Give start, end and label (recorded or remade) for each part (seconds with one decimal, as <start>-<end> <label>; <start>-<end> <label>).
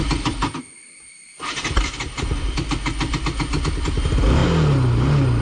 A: 0.0-5.4 recorded